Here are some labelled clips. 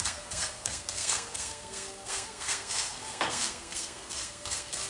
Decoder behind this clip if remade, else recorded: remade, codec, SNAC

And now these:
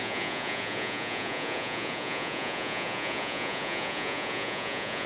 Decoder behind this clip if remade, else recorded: remade, vocoder, Vocos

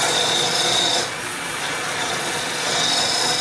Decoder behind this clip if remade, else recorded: remade, vocoder, Vocos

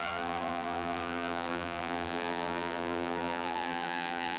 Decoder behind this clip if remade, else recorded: remade, vocoder, BigVGAN v2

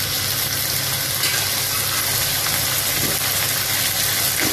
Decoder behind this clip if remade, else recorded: recorded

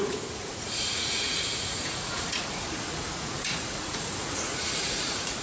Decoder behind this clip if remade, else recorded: remade, vocoder, Vocos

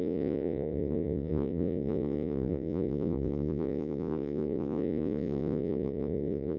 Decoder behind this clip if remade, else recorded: remade, vocoder, Vocos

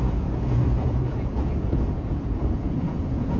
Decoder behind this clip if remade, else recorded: remade, vocoder, Vocos